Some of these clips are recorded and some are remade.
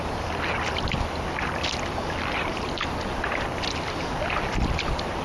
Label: recorded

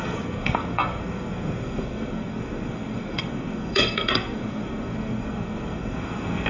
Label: remade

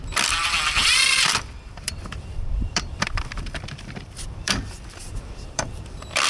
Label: remade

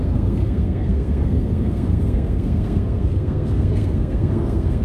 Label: remade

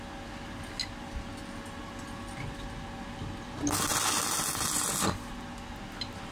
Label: recorded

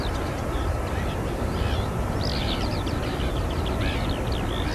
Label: recorded